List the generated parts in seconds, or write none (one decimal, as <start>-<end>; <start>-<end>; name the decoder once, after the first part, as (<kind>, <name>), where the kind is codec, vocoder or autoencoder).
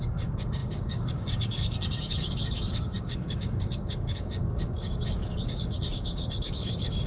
0.0-7.1 (codec, DAC)